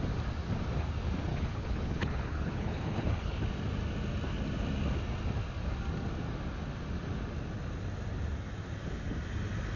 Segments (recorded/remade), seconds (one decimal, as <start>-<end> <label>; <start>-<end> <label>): 0.0-1.3 recorded; 1.3-3.4 remade; 3.4-9.8 recorded